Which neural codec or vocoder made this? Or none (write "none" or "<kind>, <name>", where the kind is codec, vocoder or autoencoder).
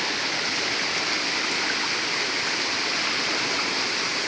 none